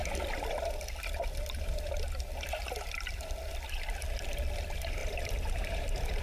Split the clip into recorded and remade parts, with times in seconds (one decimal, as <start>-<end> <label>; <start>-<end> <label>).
0.0-5.0 recorded; 5.0-6.2 remade